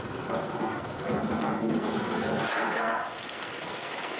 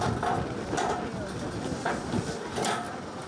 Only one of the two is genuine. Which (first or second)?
second